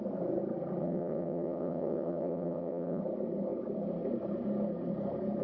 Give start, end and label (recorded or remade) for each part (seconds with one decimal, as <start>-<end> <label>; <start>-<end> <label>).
0.0-0.8 recorded; 0.8-3.0 remade; 3.0-5.4 recorded